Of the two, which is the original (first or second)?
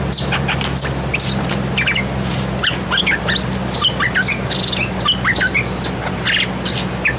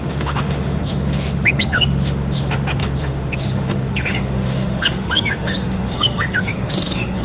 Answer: first